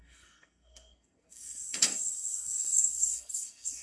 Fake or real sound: fake